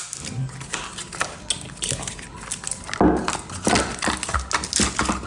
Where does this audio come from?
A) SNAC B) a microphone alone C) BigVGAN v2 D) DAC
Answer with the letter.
B